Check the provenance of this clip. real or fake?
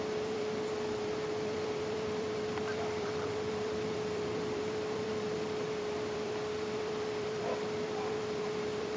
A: fake